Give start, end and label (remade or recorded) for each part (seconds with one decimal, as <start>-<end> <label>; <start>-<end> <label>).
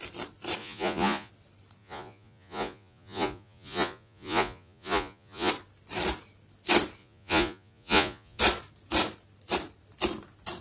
0.0-0.6 recorded; 0.6-1.3 remade; 1.3-1.8 recorded; 1.8-5.5 remade; 5.5-7.0 recorded; 7.0-8.4 remade; 8.4-10.6 recorded